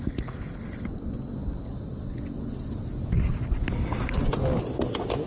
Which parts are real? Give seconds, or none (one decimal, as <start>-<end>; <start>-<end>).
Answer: 0.0-5.3